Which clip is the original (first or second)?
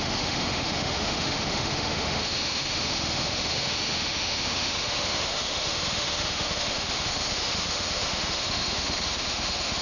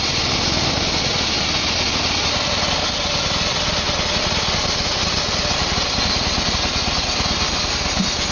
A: second